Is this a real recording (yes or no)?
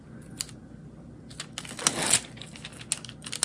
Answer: yes